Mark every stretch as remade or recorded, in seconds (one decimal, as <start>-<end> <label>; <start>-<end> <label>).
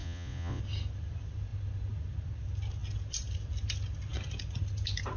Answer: 0.0-0.6 remade; 0.6-5.2 recorded